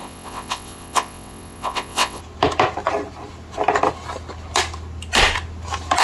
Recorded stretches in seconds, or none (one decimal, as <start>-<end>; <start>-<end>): 2.2-6.0